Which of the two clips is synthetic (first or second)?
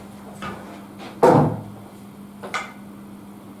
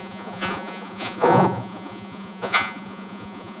second